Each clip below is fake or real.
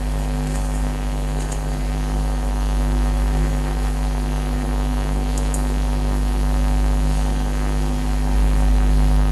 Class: fake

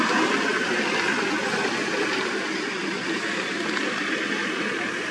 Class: real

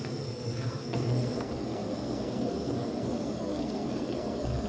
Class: fake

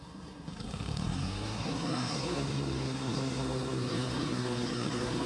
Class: fake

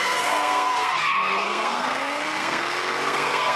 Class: fake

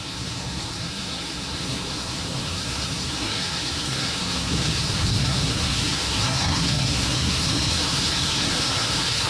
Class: fake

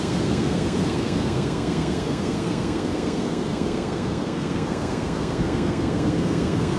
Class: fake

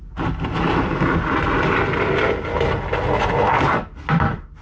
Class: real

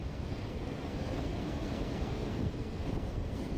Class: fake